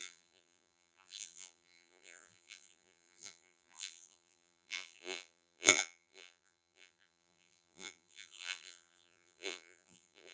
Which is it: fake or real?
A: fake